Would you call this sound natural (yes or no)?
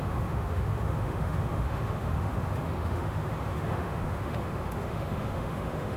no